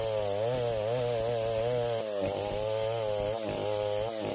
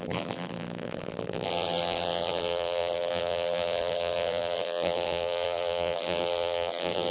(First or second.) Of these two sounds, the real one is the first